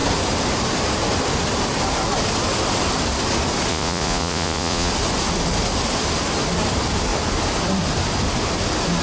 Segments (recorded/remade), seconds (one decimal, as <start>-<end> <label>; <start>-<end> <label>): 0.0-3.7 recorded; 3.7-4.9 remade; 4.9-9.0 recorded